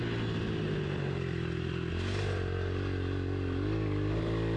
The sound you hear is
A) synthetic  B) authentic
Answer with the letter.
B